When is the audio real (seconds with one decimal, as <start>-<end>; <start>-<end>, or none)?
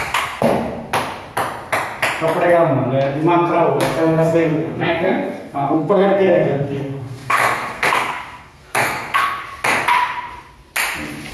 0.5-3.7; 9.4-11.3